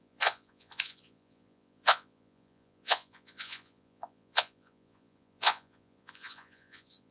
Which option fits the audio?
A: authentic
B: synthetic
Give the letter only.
B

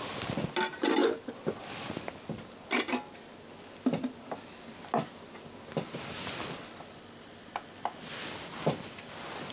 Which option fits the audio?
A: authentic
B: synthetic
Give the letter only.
A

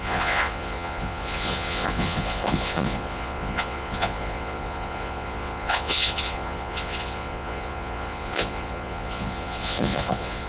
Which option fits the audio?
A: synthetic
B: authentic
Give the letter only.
A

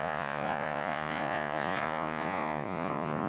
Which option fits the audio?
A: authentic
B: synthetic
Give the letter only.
B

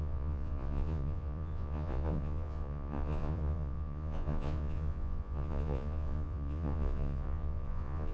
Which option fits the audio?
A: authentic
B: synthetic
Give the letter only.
B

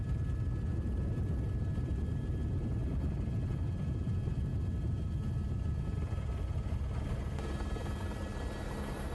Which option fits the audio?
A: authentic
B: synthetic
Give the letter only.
A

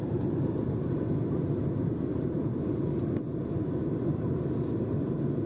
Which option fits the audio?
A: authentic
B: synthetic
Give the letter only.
A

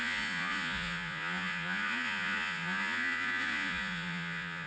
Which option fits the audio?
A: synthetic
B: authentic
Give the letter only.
A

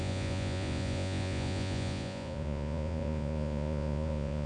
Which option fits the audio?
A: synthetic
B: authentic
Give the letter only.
A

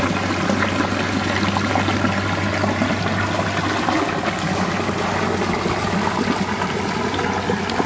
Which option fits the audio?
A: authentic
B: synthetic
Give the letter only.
A